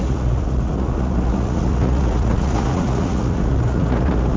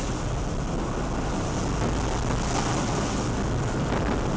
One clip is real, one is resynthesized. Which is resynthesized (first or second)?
first